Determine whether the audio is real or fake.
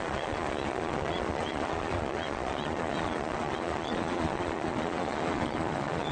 fake